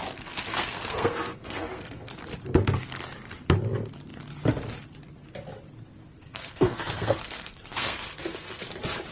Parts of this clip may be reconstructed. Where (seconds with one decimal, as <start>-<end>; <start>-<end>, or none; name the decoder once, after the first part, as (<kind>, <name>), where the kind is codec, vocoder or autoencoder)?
0.5-2.1 (codec, SNAC); 6.2-8.6